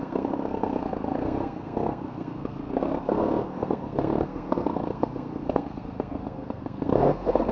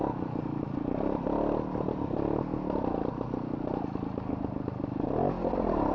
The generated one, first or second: first